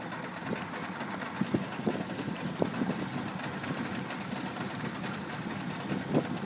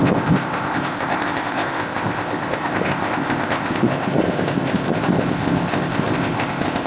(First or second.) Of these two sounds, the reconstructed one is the second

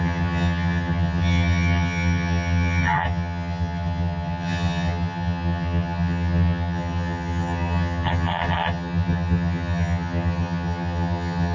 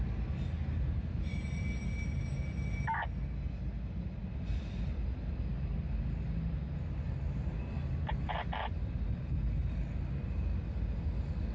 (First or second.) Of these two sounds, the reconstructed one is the first